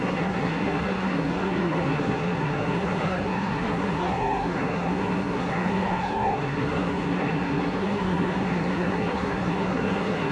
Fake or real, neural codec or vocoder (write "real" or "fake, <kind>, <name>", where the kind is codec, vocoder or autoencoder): fake, codec, SNAC